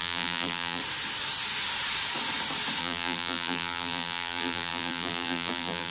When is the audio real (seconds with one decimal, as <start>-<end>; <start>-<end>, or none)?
0.8-2.8